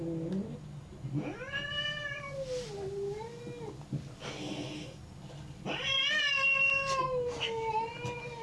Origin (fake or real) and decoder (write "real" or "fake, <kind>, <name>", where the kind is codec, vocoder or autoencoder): real